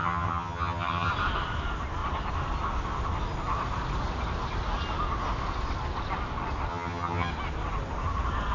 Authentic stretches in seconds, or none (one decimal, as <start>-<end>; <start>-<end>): 1.1-6.7; 7.3-8.5